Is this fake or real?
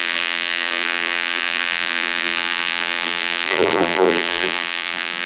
fake